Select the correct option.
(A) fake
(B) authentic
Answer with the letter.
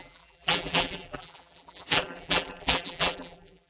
A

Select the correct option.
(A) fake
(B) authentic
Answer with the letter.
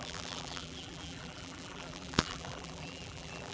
A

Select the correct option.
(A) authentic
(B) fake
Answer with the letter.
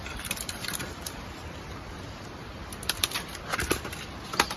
B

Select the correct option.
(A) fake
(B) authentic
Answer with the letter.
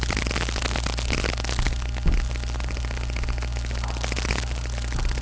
B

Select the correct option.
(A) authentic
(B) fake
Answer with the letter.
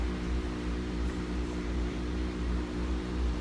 B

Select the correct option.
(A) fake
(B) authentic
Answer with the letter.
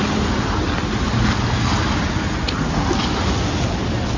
B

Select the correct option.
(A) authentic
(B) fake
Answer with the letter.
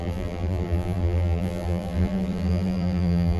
B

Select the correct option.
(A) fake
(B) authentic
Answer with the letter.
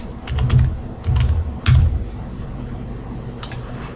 B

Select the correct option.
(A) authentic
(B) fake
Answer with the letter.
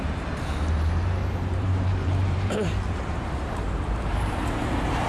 B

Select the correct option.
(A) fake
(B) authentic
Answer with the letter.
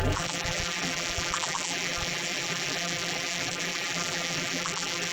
A